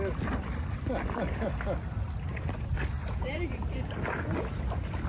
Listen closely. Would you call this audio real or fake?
real